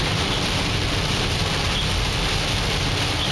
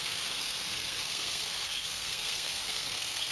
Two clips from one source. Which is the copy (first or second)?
second